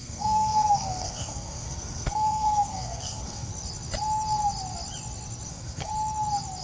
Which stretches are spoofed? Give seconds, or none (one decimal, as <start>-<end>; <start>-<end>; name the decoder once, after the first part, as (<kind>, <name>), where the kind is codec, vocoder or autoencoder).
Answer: 0.0-3.5 (codec, SNAC); 5.5-5.9